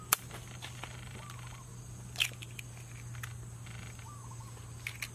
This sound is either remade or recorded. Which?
recorded